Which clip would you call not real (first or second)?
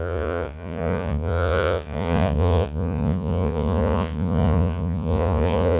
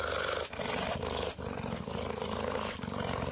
first